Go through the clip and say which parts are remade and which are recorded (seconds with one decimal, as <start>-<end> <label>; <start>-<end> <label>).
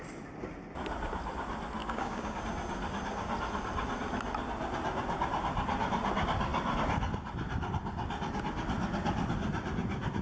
0.0-1.8 recorded; 1.8-2.4 remade; 2.4-10.2 recorded